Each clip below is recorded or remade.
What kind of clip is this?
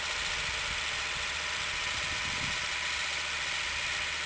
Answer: recorded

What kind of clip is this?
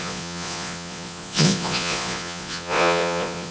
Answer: remade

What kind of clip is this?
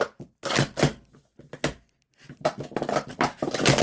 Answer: recorded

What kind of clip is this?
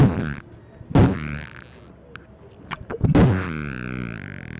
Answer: recorded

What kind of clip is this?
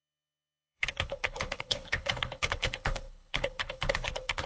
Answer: remade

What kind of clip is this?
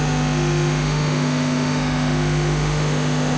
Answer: remade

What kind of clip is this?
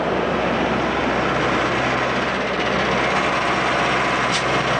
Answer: recorded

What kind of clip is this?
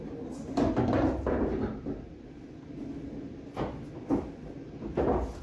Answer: recorded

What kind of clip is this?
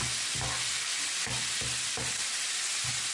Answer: recorded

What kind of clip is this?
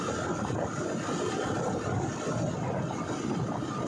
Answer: recorded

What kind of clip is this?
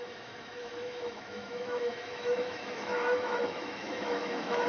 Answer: remade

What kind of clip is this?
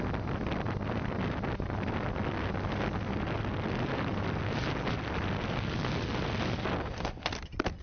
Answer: recorded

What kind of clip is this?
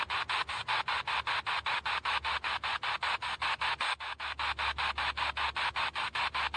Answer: recorded